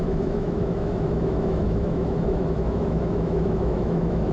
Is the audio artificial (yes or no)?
yes